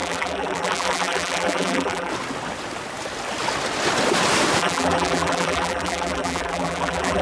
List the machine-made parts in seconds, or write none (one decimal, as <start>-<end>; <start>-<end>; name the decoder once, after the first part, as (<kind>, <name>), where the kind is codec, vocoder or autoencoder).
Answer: 0.0-2.1 (vocoder, BigVGAN v2); 4.6-7.2